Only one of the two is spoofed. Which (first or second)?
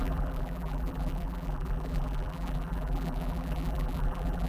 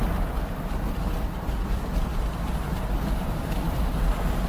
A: first